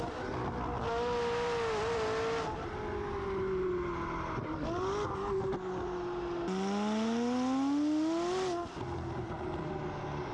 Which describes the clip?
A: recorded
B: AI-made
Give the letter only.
A